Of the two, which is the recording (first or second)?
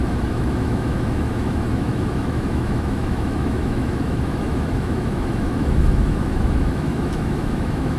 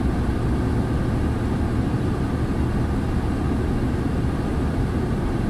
second